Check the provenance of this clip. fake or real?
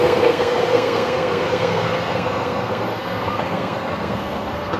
fake